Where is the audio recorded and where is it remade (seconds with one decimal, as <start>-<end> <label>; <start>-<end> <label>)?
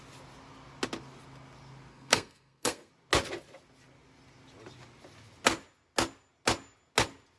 0.0-1.9 recorded; 1.9-2.9 remade; 2.9-7.4 recorded